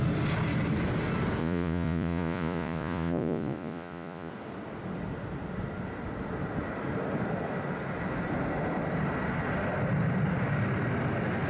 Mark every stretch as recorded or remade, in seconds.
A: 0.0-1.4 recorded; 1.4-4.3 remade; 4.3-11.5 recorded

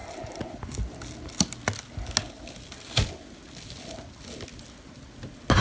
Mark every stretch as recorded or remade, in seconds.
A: 0.0-5.6 recorded

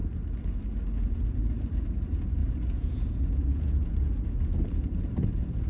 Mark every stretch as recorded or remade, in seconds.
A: 0.0-2.4 recorded; 2.4-4.2 remade; 4.2-5.7 recorded

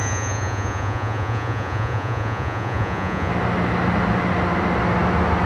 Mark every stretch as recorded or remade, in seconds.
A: 0.0-3.3 remade; 3.3-5.5 recorded

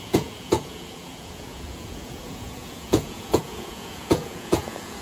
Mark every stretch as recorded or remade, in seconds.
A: 0.0-5.0 remade

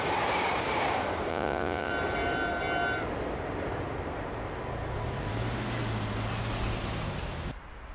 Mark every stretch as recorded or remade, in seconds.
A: 0.0-1.3 recorded; 1.3-1.9 remade; 1.9-7.9 recorded